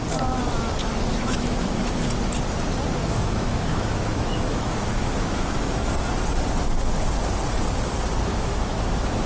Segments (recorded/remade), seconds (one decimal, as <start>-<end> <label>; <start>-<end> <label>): 0.0-1.1 recorded; 1.1-2.0 remade; 2.0-3.0 recorded; 3.0-5.9 remade; 5.9-8.3 recorded; 8.3-9.3 remade